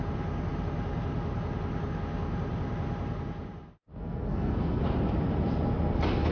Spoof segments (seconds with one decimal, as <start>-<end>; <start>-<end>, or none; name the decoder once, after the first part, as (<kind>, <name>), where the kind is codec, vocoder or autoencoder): 3.9-4.8 (codec, SNAC)